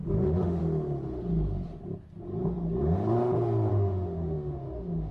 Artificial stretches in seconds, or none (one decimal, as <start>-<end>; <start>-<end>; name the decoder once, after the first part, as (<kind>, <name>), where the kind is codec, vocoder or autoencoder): 0.0-0.6 (autoencoder, DAC-VAE); 3.7-5.1